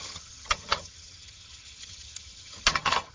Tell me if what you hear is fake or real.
fake